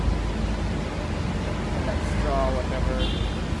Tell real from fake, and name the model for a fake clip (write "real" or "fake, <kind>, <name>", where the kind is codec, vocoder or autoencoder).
real